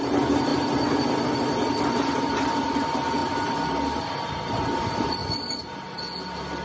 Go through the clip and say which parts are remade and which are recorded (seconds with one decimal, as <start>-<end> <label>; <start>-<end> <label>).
0.0-6.6 recorded